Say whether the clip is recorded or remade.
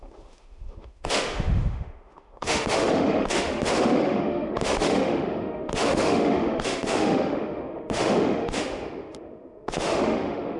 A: remade